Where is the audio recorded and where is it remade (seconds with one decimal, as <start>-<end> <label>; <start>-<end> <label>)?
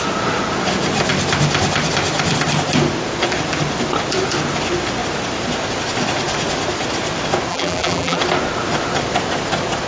0.0-7.5 recorded; 7.5-8.2 remade; 8.2-9.9 recorded